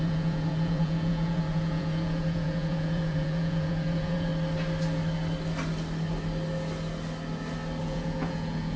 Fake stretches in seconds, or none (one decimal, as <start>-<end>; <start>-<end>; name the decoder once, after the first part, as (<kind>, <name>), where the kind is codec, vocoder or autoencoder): 0.0-4.3 (vocoder, Vocos); 7.8-8.8